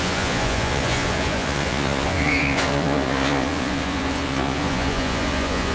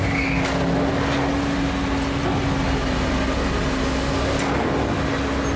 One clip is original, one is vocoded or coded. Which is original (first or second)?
second